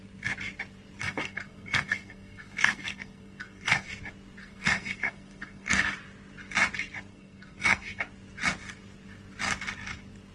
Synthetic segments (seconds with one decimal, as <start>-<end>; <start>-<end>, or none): 1.0-3.9; 4.4-5.9; 7.1-8.0